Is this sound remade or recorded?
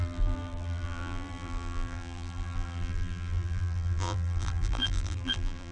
remade